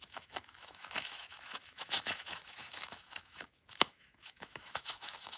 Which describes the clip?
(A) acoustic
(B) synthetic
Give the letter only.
B